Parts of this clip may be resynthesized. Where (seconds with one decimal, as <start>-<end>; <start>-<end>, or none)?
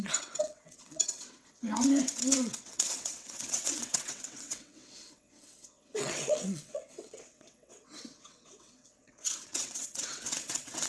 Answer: 0.0-10.9